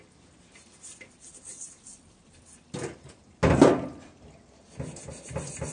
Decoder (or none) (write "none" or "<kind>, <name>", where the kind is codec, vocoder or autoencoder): none